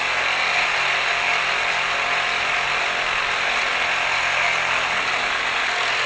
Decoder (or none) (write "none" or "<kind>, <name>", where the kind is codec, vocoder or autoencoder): none